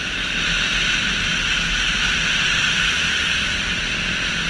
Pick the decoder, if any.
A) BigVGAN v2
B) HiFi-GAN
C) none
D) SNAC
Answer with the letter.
C